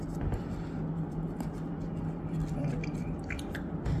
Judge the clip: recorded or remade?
recorded